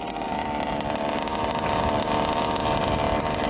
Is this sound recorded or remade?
recorded